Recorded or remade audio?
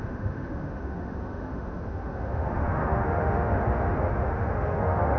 remade